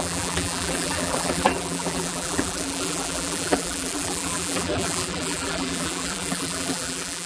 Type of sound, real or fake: fake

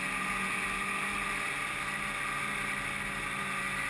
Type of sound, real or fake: real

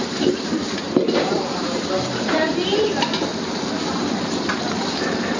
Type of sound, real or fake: fake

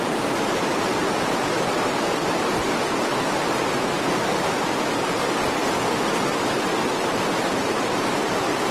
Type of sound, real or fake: fake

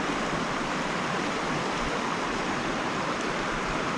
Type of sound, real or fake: fake